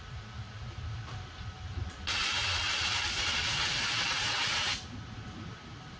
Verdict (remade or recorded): remade